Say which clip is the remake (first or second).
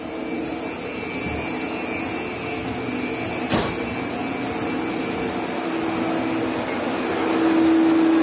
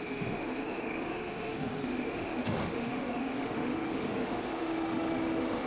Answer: second